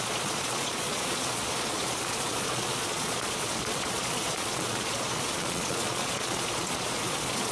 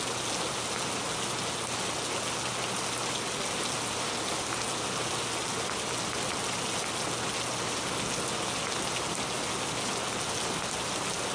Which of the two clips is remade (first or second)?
first